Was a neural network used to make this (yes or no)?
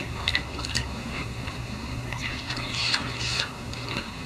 yes